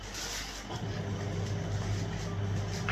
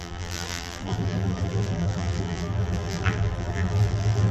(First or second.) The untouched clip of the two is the first